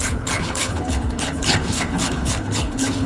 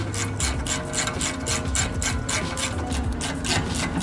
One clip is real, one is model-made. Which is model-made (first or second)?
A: first